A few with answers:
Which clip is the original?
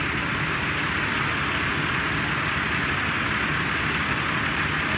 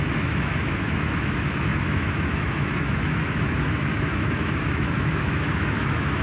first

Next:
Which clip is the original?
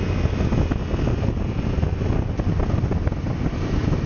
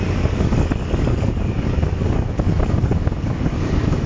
first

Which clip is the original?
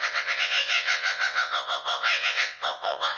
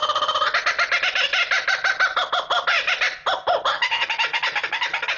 second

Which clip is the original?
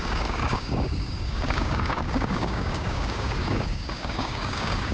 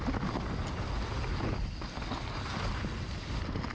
second